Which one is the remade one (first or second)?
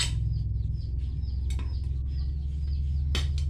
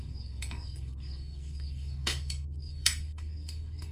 second